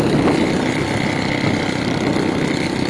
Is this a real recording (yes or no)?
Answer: yes